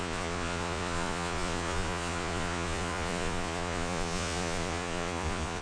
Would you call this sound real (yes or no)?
no